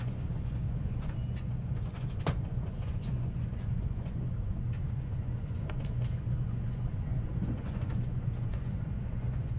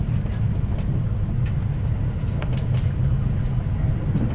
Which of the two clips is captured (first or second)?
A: second